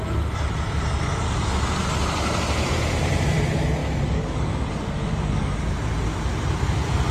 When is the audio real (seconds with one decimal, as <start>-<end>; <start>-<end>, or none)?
0.0-3.8; 5.6-7.1